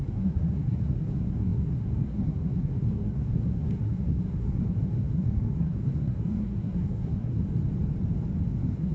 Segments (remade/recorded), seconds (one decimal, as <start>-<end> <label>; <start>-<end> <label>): 0.0-7.4 remade; 7.4-8.5 recorded; 8.5-8.9 remade

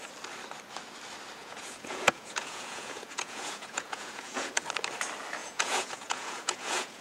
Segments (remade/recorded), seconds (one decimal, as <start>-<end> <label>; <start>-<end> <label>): 0.0-1.4 recorded; 1.4-4.5 remade; 4.5-5.4 recorded; 5.4-7.0 remade

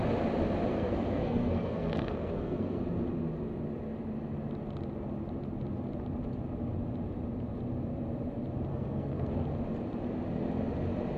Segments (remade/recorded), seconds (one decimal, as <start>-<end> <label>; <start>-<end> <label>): 0.0-0.7 recorded; 0.7-2.8 remade; 2.8-8.7 recorded; 8.7-9.3 remade; 9.3-11.2 recorded